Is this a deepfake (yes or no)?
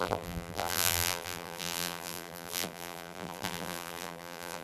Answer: yes